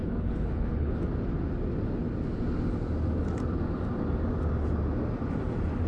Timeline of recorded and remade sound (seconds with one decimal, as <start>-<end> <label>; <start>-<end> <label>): 0.0-0.9 remade; 0.9-5.9 recorded